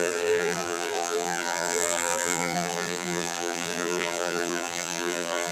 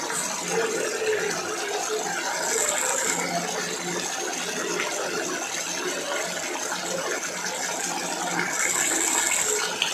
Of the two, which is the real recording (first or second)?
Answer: second